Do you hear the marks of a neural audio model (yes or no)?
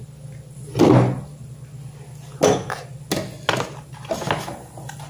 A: no